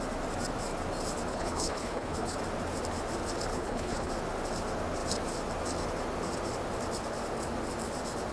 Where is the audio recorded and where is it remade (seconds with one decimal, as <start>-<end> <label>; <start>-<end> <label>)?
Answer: 0.0-1.3 recorded; 1.3-2.4 remade; 2.4-3.5 recorded; 3.5-4.1 remade; 4.1-8.3 recorded